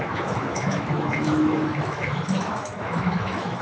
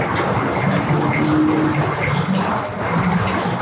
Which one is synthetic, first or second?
first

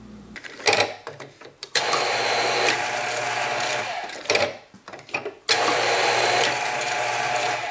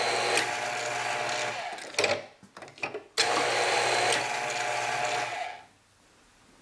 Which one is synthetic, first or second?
first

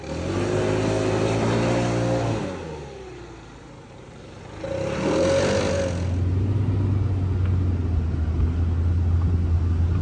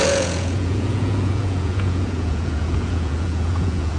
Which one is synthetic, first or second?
second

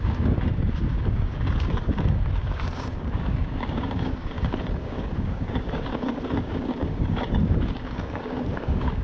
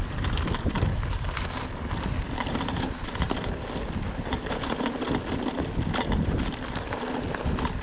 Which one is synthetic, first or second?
first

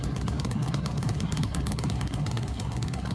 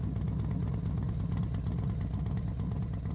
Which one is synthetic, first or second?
first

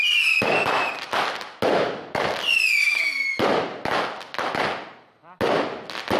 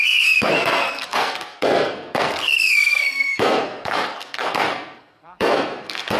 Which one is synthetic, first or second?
second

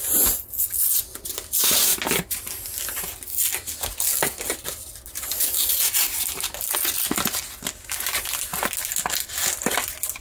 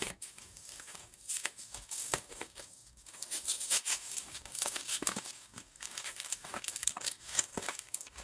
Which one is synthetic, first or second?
second